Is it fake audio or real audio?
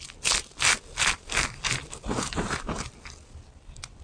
real